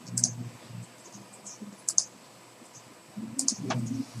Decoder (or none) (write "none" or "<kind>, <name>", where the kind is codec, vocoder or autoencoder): none